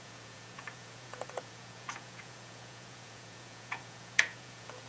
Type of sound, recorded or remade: remade